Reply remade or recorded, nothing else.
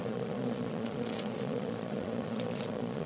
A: remade